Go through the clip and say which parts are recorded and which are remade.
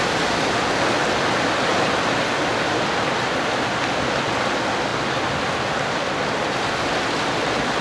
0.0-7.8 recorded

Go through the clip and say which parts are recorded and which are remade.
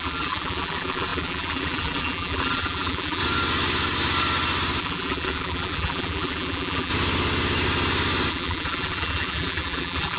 0.0-3.2 remade; 3.2-4.8 recorded; 4.8-6.9 remade; 6.9-8.3 recorded; 8.3-10.2 remade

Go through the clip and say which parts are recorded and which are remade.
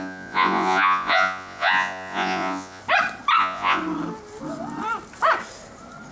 0.0-2.8 remade; 2.8-3.4 recorded; 3.4-3.8 remade; 3.8-6.1 recorded